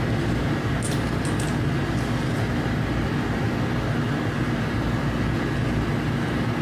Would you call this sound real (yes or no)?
yes